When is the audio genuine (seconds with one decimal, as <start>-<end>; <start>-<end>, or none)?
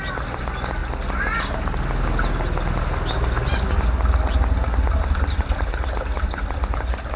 0.0-7.2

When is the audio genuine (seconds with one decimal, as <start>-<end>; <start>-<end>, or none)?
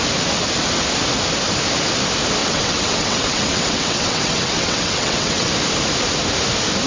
0.0-2.4; 5.5-6.9